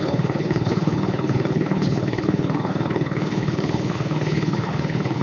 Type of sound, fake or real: fake